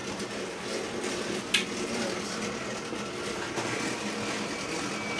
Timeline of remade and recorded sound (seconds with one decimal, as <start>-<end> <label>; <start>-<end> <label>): 0.0-5.2 recorded